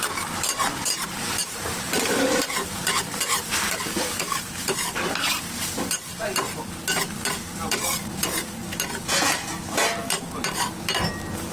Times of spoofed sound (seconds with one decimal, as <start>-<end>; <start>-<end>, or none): 0.0-6.1; 7.3-8.6

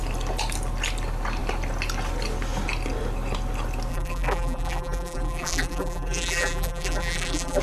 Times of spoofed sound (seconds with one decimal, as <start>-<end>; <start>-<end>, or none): 3.9-7.6